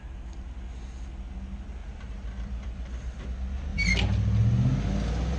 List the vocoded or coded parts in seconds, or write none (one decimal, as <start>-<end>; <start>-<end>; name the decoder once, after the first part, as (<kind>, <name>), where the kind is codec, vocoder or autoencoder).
1.8-3.2 (vocoder, BigVGAN v2)